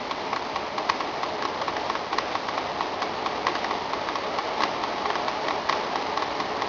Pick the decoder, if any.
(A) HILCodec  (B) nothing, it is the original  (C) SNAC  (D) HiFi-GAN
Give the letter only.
B